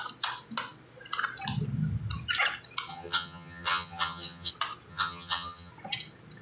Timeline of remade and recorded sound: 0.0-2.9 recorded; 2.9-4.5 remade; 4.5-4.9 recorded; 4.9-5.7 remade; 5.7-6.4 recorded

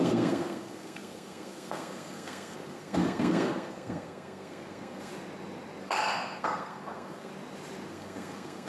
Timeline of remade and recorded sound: 0.0-5.1 remade; 5.1-5.8 recorded; 5.8-7.3 remade; 7.3-7.9 recorded; 7.9-8.7 remade

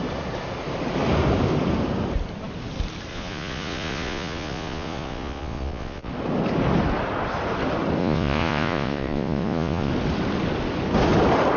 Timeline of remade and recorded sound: 0.0-3.1 recorded; 3.1-6.1 remade; 6.1-8.0 recorded; 8.0-9.9 remade; 9.9-11.6 recorded

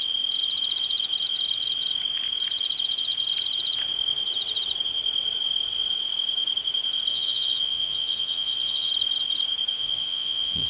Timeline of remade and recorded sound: 0.0-7.1 recorded; 7.1-8.9 remade; 8.9-9.7 recorded; 9.7-10.7 remade

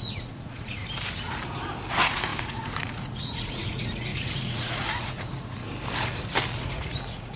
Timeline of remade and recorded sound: 0.0-0.8 remade; 0.8-1.9 recorded; 1.9-5.6 remade; 5.6-6.6 recorded; 6.6-7.4 remade